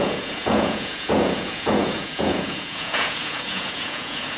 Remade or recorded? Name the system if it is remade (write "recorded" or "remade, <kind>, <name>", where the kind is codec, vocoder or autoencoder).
remade, vocoder, Vocos